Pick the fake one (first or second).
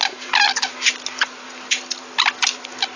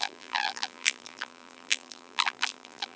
second